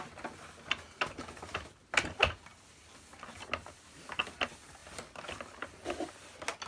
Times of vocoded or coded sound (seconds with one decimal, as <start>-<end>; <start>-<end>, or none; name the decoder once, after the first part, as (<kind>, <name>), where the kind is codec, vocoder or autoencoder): none